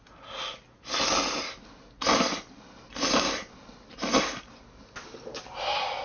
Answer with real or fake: real